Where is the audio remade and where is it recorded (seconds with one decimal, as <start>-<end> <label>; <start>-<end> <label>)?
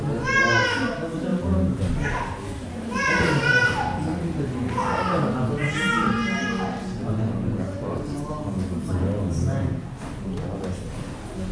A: 0.0-11.5 recorded